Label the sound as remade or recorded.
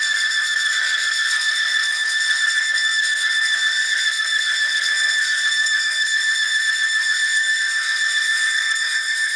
remade